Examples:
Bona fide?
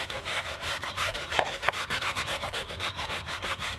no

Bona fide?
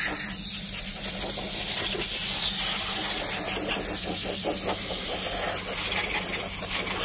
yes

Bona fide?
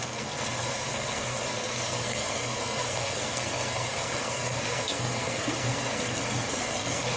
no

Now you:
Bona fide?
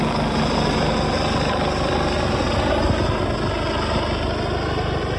yes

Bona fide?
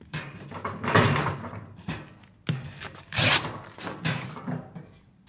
yes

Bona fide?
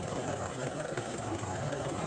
no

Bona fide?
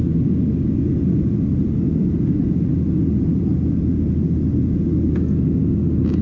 yes